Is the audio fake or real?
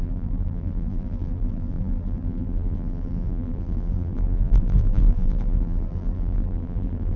fake